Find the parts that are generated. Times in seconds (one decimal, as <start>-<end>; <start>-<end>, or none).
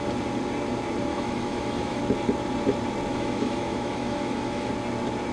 1.1-2.0; 3.1-4.7